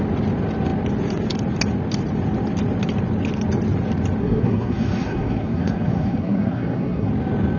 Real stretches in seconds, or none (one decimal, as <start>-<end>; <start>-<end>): 0.0-4.2; 7.1-7.6